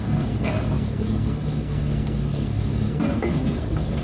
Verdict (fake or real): fake